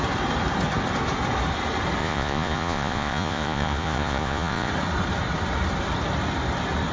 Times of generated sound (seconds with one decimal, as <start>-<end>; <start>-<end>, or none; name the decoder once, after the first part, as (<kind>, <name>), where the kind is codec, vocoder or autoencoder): 2.0-4.7 (vocoder, Vocos)